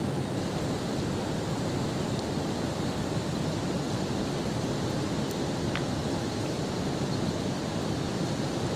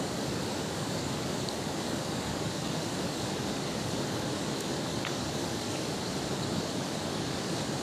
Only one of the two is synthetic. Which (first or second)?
second